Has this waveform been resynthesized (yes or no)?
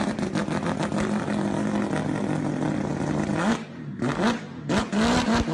no